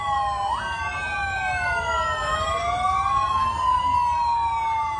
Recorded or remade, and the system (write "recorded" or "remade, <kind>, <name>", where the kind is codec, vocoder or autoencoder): recorded